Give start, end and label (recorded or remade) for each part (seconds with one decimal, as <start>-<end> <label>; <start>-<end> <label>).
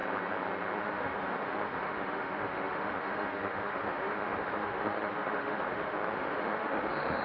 0.0-0.8 recorded; 0.8-7.2 remade